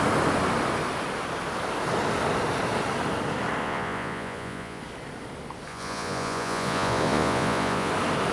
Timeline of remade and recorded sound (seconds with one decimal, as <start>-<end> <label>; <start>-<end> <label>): 0.0-3.6 recorded; 3.6-4.8 remade; 4.8-5.7 recorded; 5.7-7.9 remade; 7.9-8.3 recorded